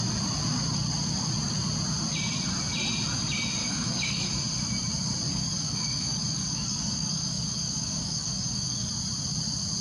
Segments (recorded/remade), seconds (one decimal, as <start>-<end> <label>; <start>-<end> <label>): 0.0-3.6 recorded; 3.6-4.3 remade; 4.3-5.3 recorded; 5.3-8.9 remade; 8.9-9.8 recorded

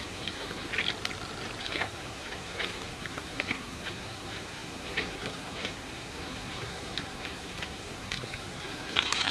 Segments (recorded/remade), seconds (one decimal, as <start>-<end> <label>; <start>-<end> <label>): 0.0-0.7 remade; 0.7-1.6 recorded; 1.6-9.3 remade

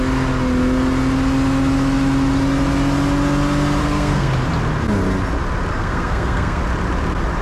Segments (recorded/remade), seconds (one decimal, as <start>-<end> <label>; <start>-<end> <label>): 0.0-3.8 recorded; 3.8-4.3 remade; 4.3-5.7 recorded; 5.7-6.6 remade; 6.6-7.4 recorded

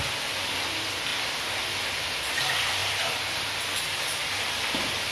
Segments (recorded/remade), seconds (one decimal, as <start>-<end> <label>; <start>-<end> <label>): 0.0-1.1 recorded; 1.1-2.4 remade; 2.4-2.8 recorded; 2.8-4.3 remade; 4.3-5.1 recorded

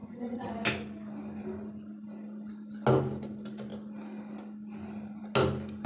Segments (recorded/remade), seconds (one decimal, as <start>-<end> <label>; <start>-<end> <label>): 0.0-0.5 remade; 0.5-5.9 recorded

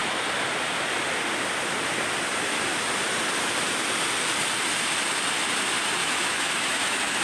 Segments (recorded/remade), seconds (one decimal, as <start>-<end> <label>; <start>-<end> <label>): 0.0-6.0 recorded; 6.0-7.2 remade

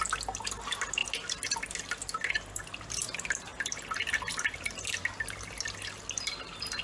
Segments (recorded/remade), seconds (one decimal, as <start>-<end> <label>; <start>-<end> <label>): 0.0-6.8 recorded